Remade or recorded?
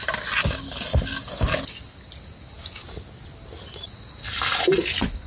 recorded